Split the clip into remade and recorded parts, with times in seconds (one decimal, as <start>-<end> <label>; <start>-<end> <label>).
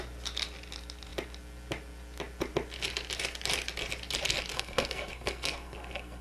0.0-4.5 recorded; 4.5-6.2 remade